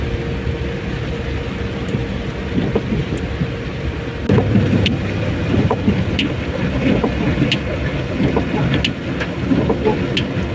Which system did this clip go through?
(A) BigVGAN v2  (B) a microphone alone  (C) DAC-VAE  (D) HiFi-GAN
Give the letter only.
B